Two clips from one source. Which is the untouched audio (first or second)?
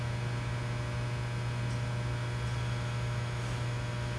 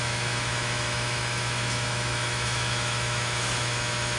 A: first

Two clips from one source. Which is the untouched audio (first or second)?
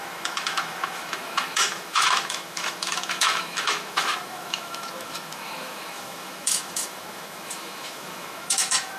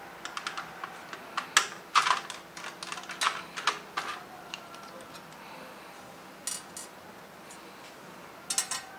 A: second